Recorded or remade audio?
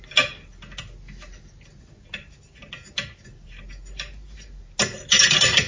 recorded